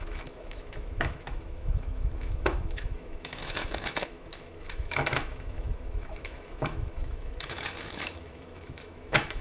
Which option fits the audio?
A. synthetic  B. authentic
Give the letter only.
A